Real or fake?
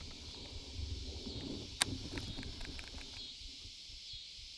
real